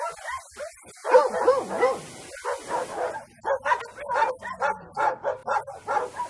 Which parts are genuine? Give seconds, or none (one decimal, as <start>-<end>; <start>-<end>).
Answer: 0.0-6.3